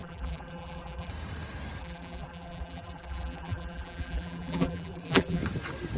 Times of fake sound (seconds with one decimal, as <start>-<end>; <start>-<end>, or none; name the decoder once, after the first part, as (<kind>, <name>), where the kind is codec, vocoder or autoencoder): 0.0-1.1 (vocoder, BigVGAN v2); 1.8-5.4